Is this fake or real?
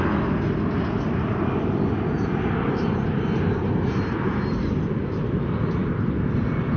real